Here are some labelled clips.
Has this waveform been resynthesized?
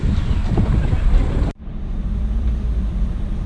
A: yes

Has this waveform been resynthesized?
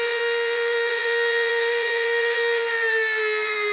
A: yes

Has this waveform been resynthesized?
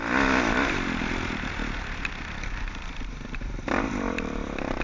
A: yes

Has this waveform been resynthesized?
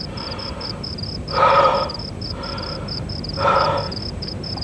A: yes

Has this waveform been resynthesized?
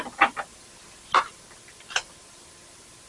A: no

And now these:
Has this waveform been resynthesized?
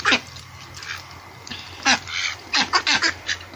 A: no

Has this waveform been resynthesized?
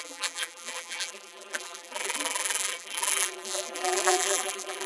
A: yes